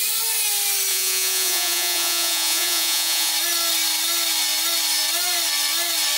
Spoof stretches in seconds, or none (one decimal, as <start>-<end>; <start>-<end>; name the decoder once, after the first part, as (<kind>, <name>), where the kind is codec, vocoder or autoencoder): 0.9-3.3 (vocoder, Vocos)